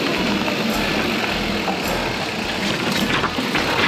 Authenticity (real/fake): real